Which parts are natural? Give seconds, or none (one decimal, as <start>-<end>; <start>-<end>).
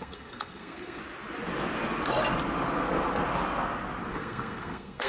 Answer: 1.0-4.1